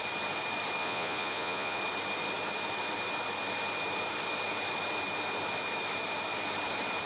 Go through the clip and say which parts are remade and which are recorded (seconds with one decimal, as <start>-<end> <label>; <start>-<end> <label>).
0.0-0.8 recorded; 0.8-1.8 remade; 1.8-7.1 recorded